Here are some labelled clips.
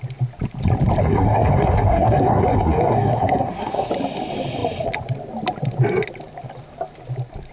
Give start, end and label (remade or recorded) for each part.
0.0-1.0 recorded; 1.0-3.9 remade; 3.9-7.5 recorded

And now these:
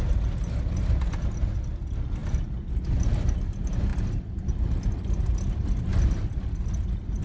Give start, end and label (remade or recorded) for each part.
0.0-7.2 recorded